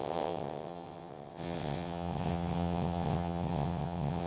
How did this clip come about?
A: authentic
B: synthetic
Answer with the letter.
B